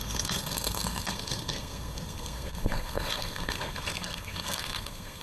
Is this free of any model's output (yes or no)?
no